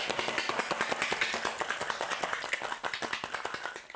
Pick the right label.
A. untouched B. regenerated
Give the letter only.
A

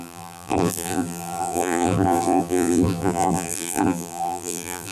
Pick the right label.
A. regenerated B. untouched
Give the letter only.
A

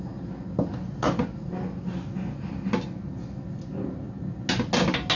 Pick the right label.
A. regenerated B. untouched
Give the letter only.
B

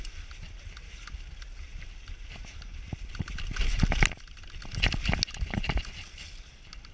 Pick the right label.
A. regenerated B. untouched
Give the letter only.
B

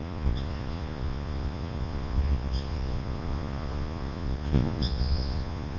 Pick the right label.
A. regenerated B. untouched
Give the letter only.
A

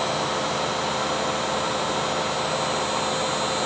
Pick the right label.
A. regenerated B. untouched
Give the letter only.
B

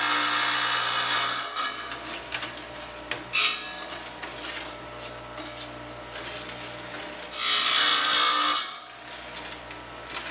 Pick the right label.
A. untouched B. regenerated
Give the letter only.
A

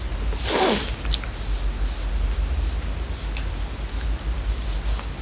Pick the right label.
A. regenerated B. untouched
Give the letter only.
B